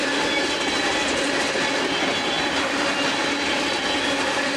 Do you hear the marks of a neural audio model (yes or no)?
no